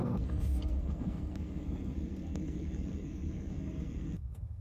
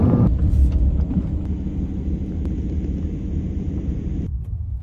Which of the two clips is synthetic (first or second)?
first